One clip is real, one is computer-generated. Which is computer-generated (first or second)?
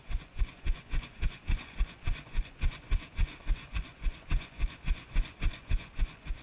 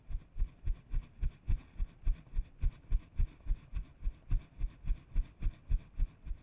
first